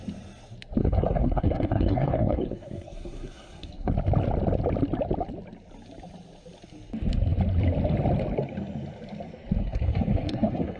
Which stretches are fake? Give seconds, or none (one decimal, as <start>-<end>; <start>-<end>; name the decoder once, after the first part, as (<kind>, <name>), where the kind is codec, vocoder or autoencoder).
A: 0.8-3.9 (codec, SNAC); 9.6-10.8